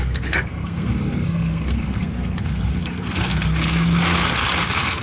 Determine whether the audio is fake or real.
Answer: fake